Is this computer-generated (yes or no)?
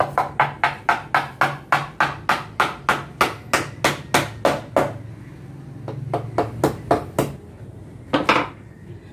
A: no